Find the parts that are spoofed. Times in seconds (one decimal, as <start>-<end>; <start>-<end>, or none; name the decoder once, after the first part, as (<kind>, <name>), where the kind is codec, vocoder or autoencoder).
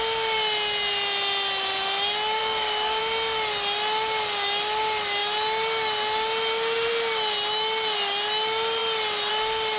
2.4-3.0 (codec, DAC)